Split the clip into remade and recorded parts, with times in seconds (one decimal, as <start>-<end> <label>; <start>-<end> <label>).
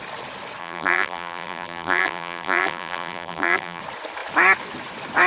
0.0-0.6 recorded; 0.6-3.8 remade; 3.8-5.3 recorded